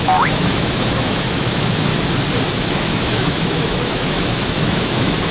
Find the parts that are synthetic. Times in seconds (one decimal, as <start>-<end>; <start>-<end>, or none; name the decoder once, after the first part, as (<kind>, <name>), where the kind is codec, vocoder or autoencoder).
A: 0.0-1.9 (autoencoder, DAC-VAE); 2.5-5.3